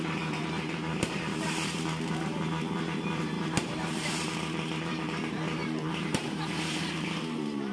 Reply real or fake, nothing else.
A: fake